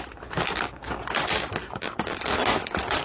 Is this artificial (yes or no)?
no